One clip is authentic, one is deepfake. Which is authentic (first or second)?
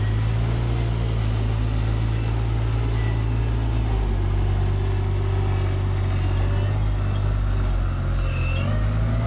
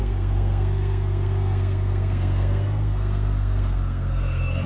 first